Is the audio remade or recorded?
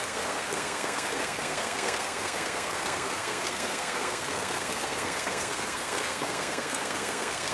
remade